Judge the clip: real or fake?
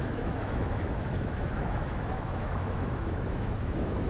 fake